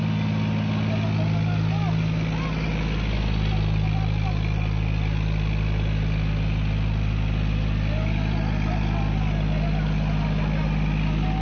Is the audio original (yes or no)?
yes